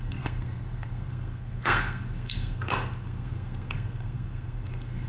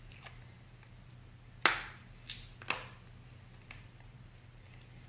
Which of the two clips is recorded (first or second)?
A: second